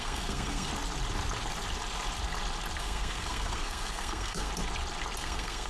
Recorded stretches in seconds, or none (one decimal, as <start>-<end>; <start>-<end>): 0.7-2.8; 4.5-5.2